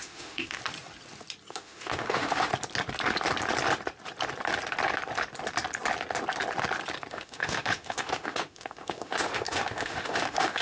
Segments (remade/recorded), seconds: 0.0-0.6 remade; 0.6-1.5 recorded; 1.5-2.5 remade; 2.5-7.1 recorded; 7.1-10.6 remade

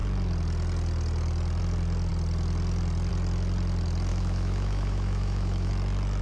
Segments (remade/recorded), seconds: 0.0-4.1 recorded; 4.1-5.7 remade; 5.7-6.2 recorded